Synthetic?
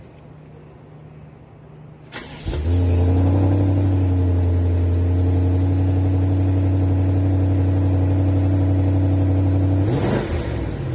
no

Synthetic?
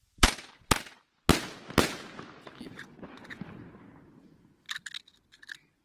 no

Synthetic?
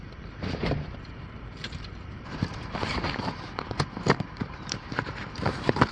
yes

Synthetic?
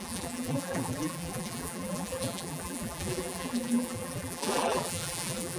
yes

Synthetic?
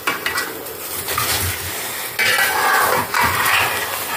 no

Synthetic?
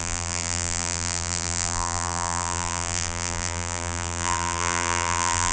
yes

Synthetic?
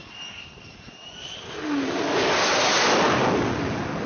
no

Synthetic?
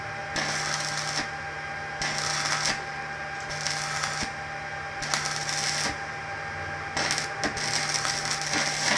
no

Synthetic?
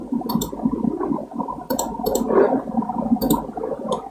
yes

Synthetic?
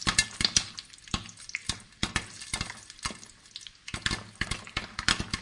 no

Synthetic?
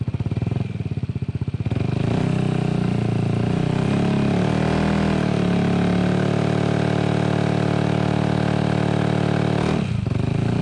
no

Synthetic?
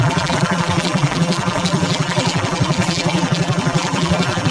yes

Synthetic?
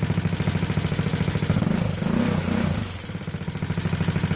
no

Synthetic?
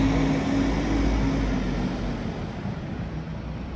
no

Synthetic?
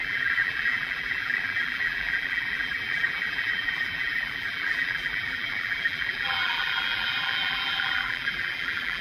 yes